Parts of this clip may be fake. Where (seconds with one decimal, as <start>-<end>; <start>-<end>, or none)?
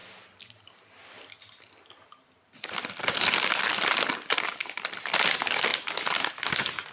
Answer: none